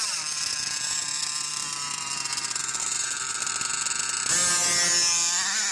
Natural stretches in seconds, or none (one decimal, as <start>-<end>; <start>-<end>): 1.5-2.8; 3.4-5.7